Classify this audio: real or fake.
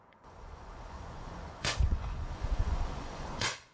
fake